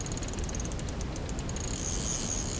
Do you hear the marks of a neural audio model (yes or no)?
no